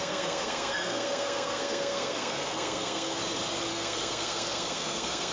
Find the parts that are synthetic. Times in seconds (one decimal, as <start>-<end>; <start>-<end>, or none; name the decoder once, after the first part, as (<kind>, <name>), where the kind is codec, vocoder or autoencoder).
0.0-3.2 (codec, SNAC); 3.7-5.3